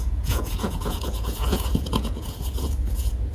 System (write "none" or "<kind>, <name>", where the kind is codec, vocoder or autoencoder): vocoder, Vocos